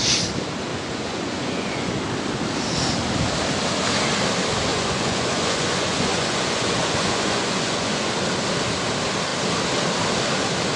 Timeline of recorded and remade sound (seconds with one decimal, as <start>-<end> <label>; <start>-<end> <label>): 0.0-0.7 recorded; 0.7-1.9 remade; 1.9-4.7 recorded; 4.7-8.1 remade; 8.1-10.8 recorded